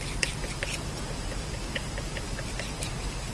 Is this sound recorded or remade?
recorded